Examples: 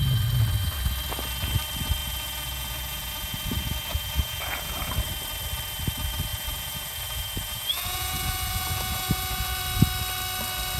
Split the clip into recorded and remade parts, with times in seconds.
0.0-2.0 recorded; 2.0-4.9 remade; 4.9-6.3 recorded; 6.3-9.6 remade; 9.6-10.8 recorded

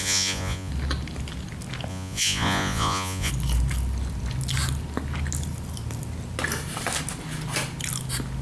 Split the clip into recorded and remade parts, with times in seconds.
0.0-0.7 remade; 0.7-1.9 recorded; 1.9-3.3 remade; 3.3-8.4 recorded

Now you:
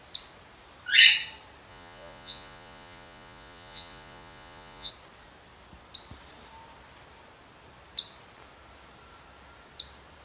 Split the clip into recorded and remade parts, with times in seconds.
0.0-1.7 recorded; 1.7-4.9 remade; 4.9-10.2 recorded

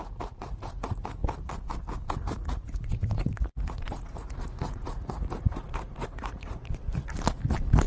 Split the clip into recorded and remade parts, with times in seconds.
0.0-1.2 remade; 1.2-2.2 recorded; 2.2-6.8 remade; 6.8-7.9 recorded